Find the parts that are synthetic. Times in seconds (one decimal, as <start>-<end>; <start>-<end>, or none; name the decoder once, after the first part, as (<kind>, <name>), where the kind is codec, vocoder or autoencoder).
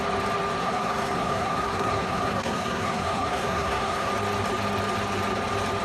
0.6-4.1 (codec, SNAC)